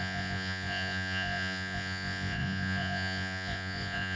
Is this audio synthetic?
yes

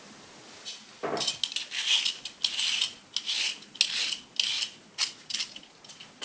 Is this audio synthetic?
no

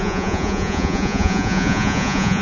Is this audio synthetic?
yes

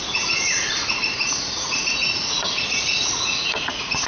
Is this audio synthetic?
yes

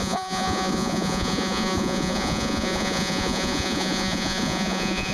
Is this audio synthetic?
yes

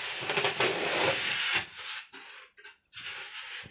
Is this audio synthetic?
no